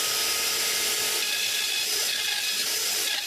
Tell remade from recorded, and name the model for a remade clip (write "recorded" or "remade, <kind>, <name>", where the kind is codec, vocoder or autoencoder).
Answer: recorded